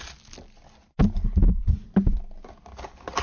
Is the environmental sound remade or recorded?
recorded